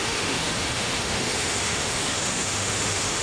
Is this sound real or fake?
fake